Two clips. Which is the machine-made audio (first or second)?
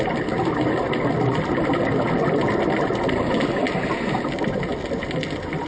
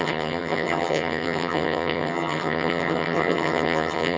second